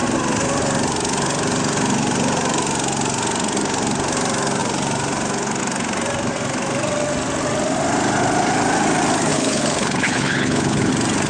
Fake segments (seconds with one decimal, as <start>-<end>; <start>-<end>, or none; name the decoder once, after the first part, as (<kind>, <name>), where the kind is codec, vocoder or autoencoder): 9.3-10.9 (codec, HILCodec)